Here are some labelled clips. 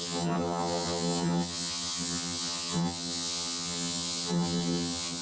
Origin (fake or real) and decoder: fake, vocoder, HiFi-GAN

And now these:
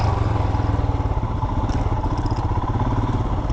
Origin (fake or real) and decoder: real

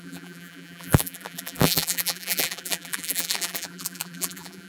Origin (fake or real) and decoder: fake, vocoder, BigVGAN v2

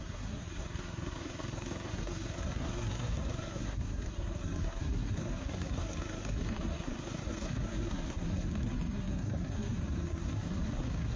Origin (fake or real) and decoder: fake, codec, SNAC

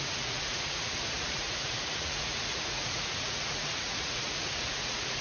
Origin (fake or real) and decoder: fake, vocoder, Vocos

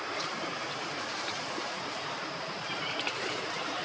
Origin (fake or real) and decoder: fake, vocoder, BigVGAN v2